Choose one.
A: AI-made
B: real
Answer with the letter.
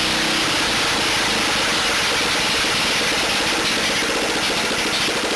B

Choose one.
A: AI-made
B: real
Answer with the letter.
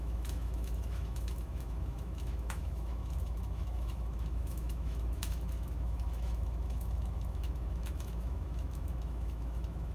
A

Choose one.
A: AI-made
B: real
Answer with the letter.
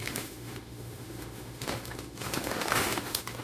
A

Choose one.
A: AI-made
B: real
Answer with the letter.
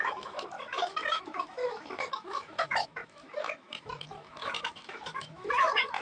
A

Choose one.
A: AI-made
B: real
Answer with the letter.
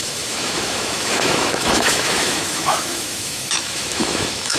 A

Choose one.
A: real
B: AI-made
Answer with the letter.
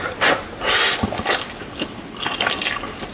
A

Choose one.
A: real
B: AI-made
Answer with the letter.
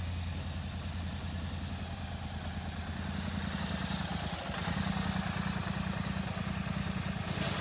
A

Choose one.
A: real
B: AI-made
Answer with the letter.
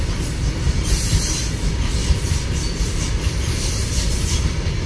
A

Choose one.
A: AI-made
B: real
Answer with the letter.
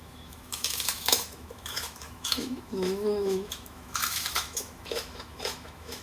A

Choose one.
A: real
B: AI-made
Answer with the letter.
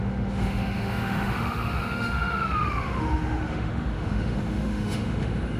B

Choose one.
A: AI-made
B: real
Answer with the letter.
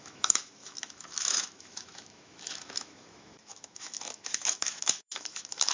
A